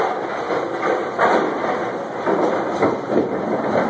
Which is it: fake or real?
real